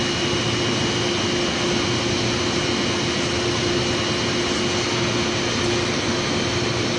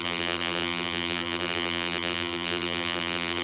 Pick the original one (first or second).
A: first